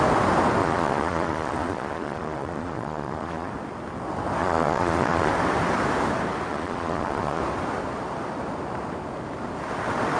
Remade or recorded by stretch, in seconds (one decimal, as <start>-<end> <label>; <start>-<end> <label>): 0.0-0.6 recorded; 0.6-3.5 remade; 3.5-4.4 recorded; 4.4-5.3 remade; 5.3-6.5 recorded; 6.5-7.4 remade; 7.4-10.2 recorded